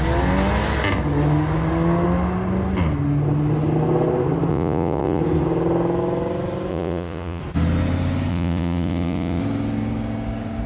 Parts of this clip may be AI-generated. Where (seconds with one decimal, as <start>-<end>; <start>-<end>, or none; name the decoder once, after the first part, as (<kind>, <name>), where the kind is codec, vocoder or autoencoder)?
4.5-5.2 (vocoder, Vocos); 6.7-7.4; 8.3-9.4

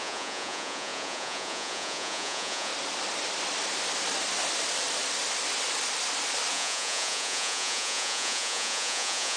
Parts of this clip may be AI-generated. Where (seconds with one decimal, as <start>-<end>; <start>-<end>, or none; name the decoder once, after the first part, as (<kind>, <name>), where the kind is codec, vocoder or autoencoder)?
0.0-2.7 (vocoder, Vocos); 6.5-9.4

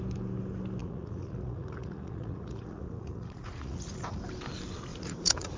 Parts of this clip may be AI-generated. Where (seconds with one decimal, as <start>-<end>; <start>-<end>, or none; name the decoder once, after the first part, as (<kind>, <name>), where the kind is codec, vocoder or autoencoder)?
0.8-4.2 (vocoder, Vocos); 4.9-5.6

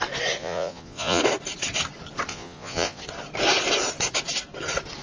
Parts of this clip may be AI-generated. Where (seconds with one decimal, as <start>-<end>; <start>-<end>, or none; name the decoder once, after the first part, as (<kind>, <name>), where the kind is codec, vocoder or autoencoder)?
0.4-1.2 (vocoder, Vocos); 2.3-3.0

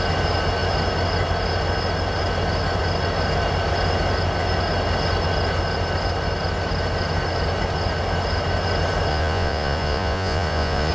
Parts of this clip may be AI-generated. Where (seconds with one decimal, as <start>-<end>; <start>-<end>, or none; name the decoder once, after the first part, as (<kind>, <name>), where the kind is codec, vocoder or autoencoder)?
9.1-10.9 (vocoder, Vocos)

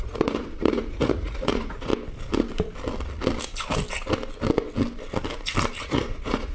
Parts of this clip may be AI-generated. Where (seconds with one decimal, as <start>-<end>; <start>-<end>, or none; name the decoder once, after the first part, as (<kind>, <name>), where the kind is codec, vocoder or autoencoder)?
0.0-1.9 (vocoder, Vocos); 5.8-6.5